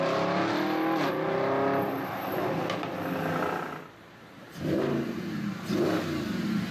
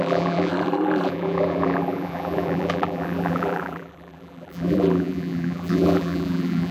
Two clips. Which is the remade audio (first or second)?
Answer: second